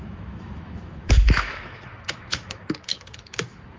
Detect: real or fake fake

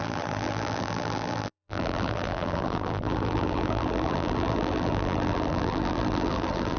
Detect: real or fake fake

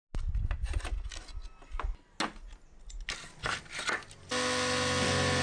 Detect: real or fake real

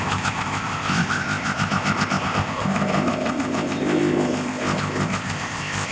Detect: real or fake fake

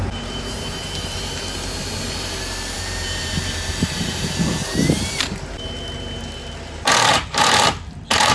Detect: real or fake fake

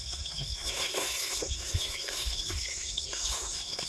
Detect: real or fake fake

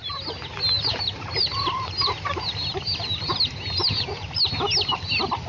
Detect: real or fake real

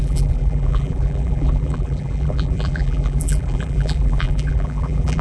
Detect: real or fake fake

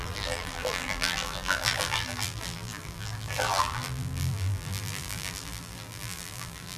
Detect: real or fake fake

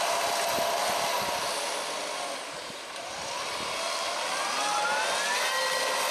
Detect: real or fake real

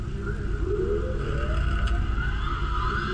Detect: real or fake real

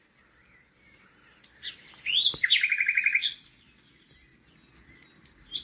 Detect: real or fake real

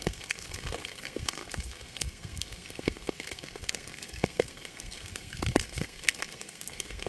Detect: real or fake fake